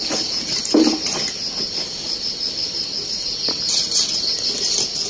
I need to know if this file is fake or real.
real